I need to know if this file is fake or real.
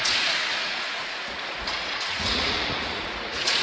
fake